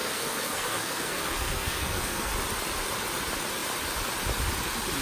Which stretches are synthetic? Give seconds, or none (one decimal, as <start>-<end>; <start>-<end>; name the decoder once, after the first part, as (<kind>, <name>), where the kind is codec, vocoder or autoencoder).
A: 0.0-2.3 (codec, SNAC)

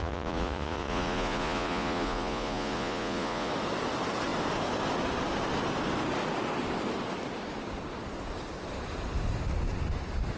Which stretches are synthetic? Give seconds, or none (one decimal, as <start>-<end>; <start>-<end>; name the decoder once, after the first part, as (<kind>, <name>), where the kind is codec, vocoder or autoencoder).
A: 0.0-3.5 (vocoder, Vocos)

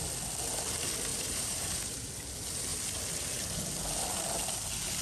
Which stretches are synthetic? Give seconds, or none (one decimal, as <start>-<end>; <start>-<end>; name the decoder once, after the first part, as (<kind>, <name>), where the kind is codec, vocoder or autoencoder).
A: 1.1-2.1 (vocoder, BigVGAN v2)

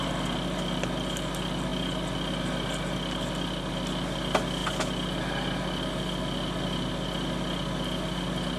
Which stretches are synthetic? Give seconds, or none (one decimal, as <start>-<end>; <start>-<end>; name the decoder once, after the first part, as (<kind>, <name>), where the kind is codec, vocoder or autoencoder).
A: none

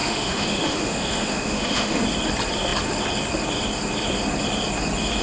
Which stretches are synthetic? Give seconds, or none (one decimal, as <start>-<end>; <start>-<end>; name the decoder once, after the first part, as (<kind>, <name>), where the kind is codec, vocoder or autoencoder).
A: 0.0-2.0 (autoencoder, DAC-VAE)

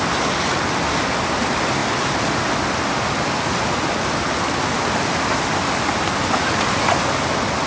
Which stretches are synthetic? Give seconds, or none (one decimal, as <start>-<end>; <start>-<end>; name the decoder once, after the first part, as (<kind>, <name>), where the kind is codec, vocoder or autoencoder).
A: none

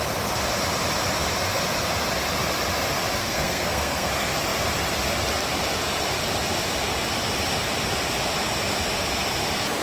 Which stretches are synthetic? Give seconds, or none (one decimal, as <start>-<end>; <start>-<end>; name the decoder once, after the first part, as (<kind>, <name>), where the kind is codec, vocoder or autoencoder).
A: 3.2-4.1 (codec, SNAC)